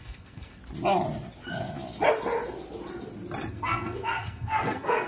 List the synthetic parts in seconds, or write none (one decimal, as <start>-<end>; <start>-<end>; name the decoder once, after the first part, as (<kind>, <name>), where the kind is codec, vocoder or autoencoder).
0.0-0.6 (codec, SNAC); 3.5-5.1